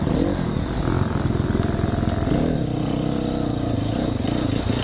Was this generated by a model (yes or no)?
no